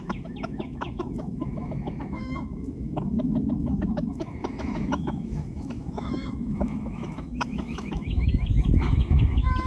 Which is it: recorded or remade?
remade